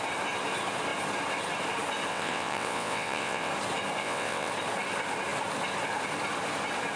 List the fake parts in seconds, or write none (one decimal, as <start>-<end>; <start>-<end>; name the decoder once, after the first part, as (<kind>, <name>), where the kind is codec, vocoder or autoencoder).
2.1-3.5 (vocoder, WaveNeXt); 4.0-4.5

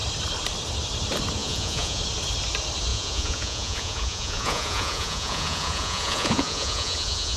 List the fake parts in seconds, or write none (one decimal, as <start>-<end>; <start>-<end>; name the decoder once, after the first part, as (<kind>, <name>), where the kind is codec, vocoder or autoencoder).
1.4-2.0 (vocoder, Vocos); 2.9-7.4

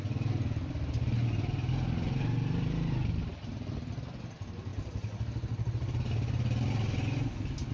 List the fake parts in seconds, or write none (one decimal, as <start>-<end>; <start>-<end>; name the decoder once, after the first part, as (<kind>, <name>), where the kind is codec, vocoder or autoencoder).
none

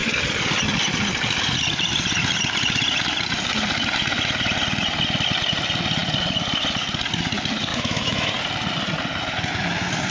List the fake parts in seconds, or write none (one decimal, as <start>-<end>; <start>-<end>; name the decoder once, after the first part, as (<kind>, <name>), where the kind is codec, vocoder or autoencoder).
7.7-8.3 (autoencoder, DAC-VAE)

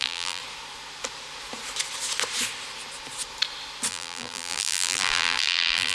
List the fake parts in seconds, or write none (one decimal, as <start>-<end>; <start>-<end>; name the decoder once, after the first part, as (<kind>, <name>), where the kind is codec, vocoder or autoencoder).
0.0-0.4 (vocoder, BigVGAN v2); 3.9-5.9

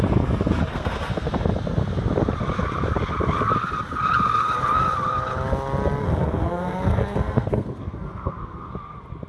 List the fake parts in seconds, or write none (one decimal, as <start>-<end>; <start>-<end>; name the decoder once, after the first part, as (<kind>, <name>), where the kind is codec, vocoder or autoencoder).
0.7-1.3 (codec, SNAC); 6.0-8.7